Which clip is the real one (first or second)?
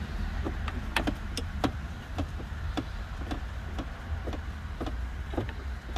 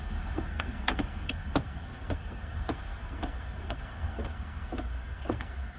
first